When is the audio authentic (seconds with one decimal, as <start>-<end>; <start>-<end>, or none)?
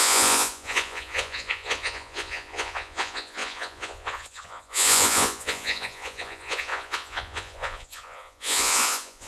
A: none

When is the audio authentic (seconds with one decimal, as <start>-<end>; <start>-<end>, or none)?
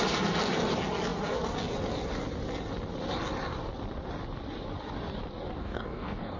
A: 0.0-5.6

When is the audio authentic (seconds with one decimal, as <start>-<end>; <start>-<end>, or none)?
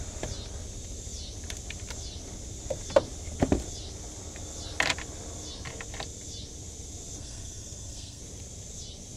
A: 0.0-7.2; 8.2-9.2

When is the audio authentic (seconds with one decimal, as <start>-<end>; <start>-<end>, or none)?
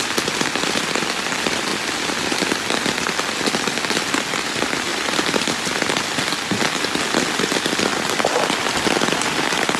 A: 0.0-4.9; 6.2-7.9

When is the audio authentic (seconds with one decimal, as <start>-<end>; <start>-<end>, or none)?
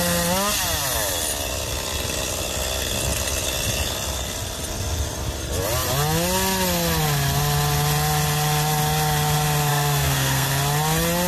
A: 0.0-9.7; 10.5-11.3